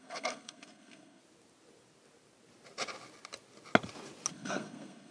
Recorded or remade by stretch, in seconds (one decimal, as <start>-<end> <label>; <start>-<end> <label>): 0.0-1.2 remade; 1.2-4.3 recorded; 4.3-5.1 remade